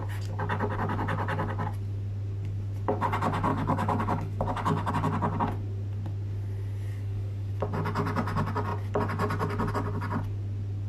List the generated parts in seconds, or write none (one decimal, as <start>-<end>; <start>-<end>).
3.5-4.9; 6.9-7.5